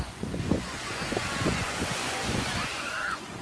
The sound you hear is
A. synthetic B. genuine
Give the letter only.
A